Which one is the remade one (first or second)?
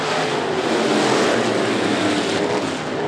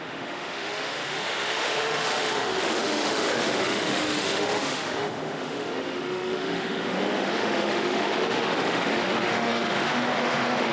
second